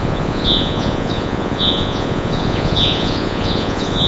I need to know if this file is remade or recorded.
remade